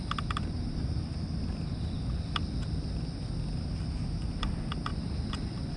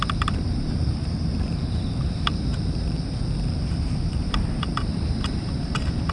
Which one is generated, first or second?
second